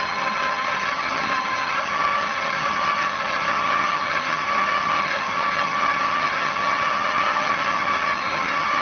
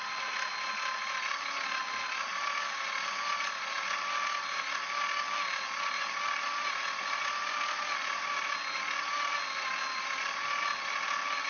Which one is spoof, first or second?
first